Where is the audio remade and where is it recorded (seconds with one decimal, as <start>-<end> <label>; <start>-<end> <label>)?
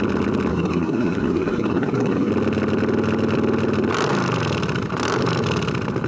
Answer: 0.0-0.5 recorded; 0.5-2.3 remade; 2.3-6.1 recorded